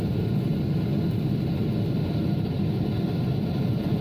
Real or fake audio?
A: real